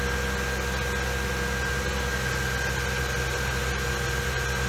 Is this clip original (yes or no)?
yes